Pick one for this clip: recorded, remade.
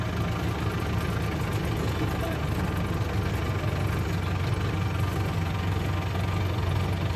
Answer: recorded